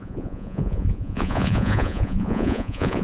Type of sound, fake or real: fake